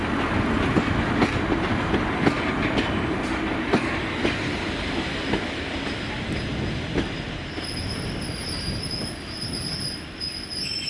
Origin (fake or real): real